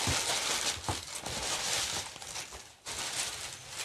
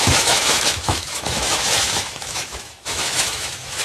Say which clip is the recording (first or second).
first